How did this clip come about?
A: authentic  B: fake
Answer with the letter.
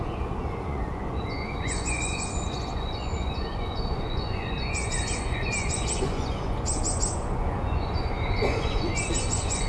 B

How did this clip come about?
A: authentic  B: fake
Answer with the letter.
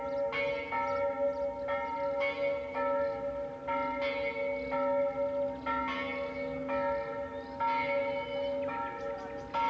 A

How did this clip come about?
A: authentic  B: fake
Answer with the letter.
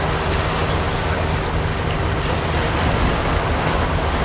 A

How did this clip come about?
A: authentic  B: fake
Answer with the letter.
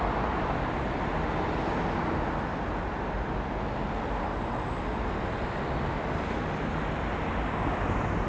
A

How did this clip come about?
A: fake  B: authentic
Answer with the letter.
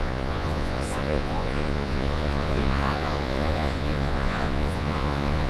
A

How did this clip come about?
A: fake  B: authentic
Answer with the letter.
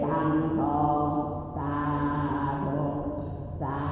B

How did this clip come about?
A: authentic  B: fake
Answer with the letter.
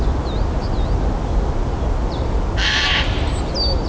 A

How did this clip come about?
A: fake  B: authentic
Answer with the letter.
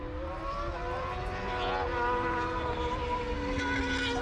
B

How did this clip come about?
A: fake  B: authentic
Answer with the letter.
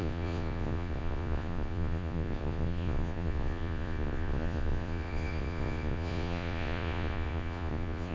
A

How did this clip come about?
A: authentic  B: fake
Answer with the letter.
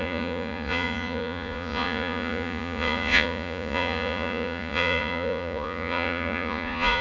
B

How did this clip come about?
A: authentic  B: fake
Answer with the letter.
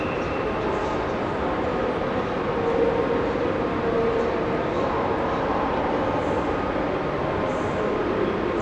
A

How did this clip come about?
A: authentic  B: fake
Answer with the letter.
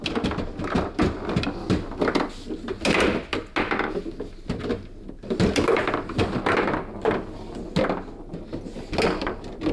A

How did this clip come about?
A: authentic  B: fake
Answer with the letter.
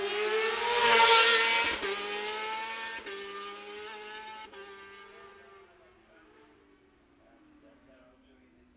A